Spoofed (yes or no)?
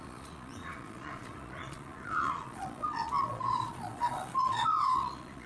yes